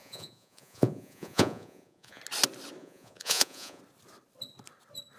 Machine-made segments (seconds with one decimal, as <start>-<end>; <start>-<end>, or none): 0.0-2.2; 2.8-3.8